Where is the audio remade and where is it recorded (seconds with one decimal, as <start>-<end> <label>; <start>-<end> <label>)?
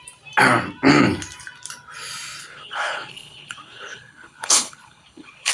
0.0-2.4 recorded; 2.4-5.5 remade